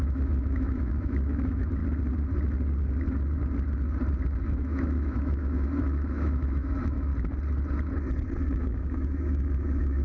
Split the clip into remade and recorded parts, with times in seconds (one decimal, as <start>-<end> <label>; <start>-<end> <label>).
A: 0.0-1.8 remade; 1.8-4.4 recorded; 4.4-7.1 remade; 7.1-8.5 recorded; 8.5-10.0 remade